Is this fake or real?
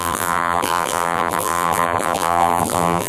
fake